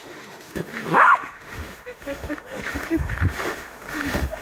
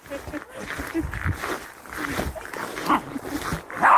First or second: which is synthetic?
first